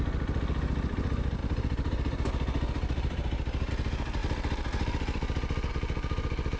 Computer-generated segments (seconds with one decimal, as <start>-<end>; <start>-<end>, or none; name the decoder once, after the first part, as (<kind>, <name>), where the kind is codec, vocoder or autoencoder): 1.4-3.7 (vocoder, BigVGAN v2)